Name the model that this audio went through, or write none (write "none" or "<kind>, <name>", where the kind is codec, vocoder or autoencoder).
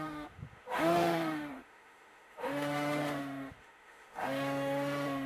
autoencoder, DAC-VAE